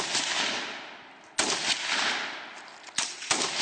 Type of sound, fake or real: real